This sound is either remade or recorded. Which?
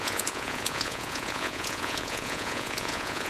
remade